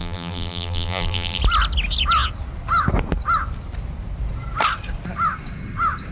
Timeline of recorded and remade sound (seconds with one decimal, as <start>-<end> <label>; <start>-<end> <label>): 0.0-1.4 remade; 1.4-6.1 recorded

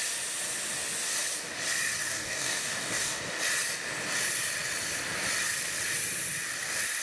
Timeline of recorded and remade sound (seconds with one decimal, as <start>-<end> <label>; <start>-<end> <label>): 0.0-2.0 recorded; 2.0-3.2 remade; 3.2-7.0 recorded

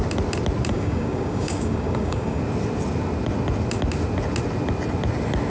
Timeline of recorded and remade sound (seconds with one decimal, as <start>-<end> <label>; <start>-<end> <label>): 0.0-0.7 recorded; 0.7-2.4 remade; 2.4-5.5 recorded